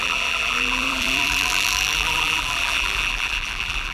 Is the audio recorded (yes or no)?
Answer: no